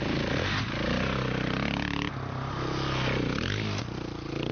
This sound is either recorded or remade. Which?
recorded